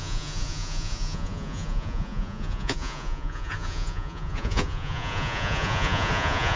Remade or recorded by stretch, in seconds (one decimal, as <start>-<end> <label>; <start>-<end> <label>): 0.0-6.6 remade